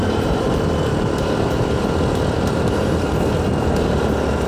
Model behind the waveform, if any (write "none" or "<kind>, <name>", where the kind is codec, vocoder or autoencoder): none